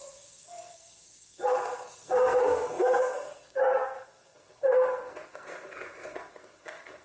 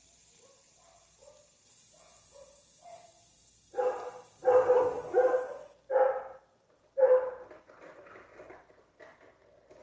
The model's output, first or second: first